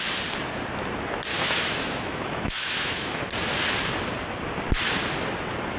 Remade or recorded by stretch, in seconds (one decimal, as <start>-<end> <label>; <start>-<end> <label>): 0.0-1.3 recorded; 1.3-3.2 remade; 3.2-5.8 recorded